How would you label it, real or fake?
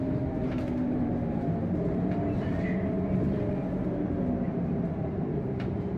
fake